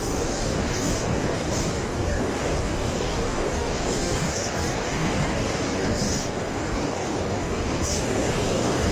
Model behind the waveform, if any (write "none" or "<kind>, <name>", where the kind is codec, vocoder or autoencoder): codec, DAC